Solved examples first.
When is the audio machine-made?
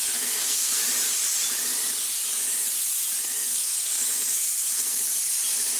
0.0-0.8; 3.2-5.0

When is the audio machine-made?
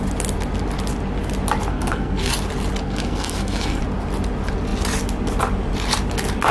1.7-2.3; 2.8-3.8